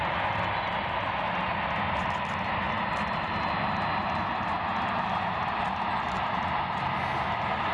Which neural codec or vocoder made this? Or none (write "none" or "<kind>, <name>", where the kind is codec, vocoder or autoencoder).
none